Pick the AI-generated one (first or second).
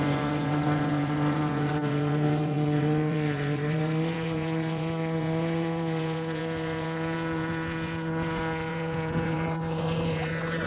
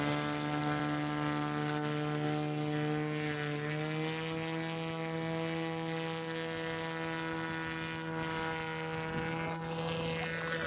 first